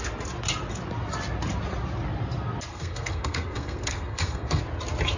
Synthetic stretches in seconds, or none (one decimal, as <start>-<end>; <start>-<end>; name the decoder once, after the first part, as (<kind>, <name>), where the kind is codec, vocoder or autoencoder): 2.7-4.6 (codec, SNAC)